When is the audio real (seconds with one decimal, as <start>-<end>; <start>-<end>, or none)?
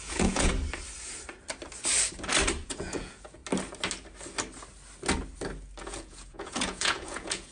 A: 0.5-2.6; 3.4-5.8